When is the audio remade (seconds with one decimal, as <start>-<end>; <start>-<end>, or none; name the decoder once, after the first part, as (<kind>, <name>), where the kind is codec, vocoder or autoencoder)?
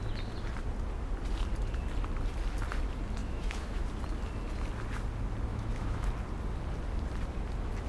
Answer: 3.2-3.9 (autoencoder, DAC-VAE); 5.5-6.1